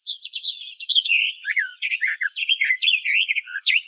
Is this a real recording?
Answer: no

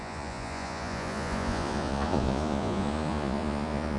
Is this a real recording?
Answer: no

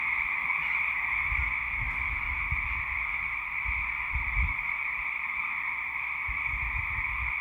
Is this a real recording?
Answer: yes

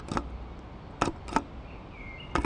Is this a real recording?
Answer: yes